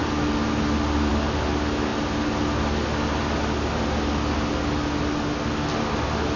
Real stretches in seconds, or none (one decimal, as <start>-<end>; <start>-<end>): 0.0-6.4